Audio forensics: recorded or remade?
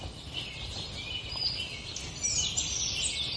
recorded